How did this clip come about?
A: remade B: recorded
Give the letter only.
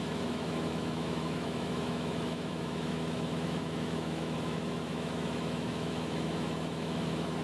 A